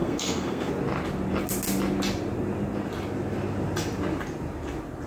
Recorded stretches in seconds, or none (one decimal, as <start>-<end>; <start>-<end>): 0.7-5.1